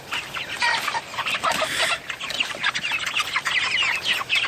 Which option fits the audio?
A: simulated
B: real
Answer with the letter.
B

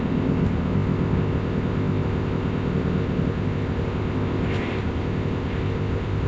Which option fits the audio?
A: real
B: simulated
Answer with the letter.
B